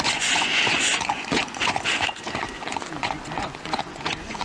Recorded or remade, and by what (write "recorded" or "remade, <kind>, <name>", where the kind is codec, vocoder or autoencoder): remade, vocoder, Vocos